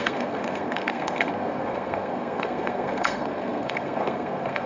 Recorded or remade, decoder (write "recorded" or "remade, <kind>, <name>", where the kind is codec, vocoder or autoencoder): remade, codec, SNAC